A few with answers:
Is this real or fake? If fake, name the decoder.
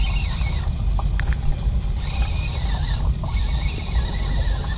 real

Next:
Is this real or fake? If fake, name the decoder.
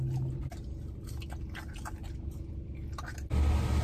real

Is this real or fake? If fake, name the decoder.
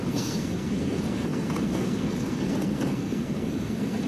fake, codec, SNAC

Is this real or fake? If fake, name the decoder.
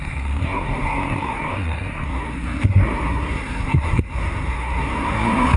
fake, codec, SNAC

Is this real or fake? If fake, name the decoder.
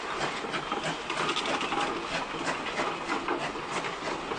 real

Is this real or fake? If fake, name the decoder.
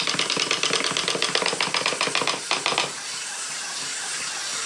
real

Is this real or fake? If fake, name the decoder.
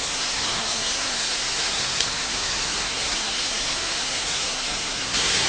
fake, codec, SNAC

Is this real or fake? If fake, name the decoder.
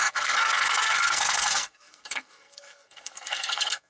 fake, codec, SNAC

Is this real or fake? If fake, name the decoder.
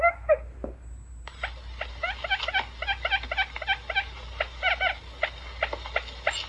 real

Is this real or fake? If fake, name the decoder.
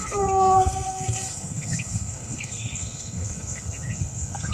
fake, codec, SNAC